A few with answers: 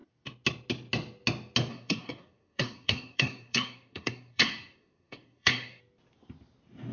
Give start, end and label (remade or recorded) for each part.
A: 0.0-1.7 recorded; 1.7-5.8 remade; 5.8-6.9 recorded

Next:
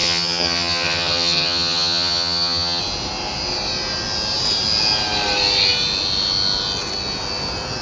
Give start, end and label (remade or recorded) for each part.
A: 0.0-2.8 remade; 2.8-7.8 recorded

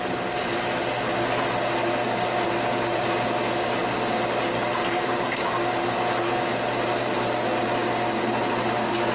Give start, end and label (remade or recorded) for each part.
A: 0.0-9.1 recorded

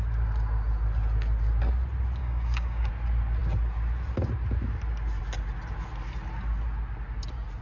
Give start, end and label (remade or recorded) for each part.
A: 0.0-2.2 recorded; 2.2-2.9 remade; 2.9-7.6 recorded

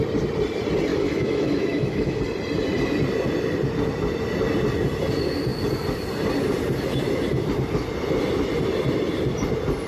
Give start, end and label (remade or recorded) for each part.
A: 0.0-0.9 recorded; 0.9-2.2 remade; 2.2-9.9 recorded